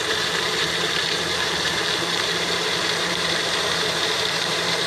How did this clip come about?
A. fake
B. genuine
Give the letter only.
A